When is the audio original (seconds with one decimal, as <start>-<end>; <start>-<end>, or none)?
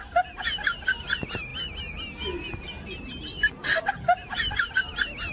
0.0-5.3